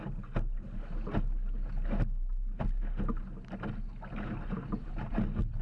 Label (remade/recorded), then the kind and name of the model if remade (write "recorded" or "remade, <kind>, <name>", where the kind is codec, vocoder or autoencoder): recorded